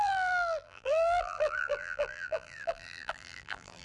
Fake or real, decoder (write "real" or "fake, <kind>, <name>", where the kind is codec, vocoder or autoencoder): fake, vocoder, BigVGAN v2